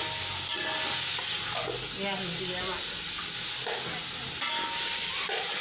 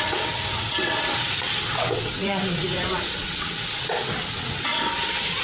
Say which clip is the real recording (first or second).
first